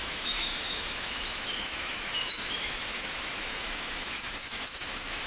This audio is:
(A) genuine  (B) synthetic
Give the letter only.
B